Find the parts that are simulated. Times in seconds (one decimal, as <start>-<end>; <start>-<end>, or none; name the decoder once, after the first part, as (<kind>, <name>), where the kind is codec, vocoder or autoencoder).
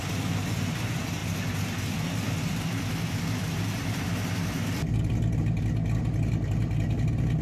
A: 1.2-5.4 (vocoder, BigVGAN v2)